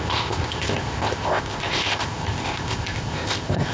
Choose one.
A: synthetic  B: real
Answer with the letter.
A